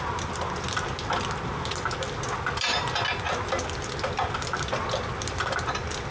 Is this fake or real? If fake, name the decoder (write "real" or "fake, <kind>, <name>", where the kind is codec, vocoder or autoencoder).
real